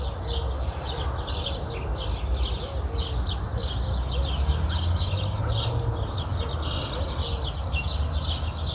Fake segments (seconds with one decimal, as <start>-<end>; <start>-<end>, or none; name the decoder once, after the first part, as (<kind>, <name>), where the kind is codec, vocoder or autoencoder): none